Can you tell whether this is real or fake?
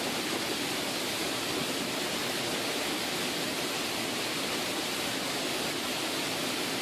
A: real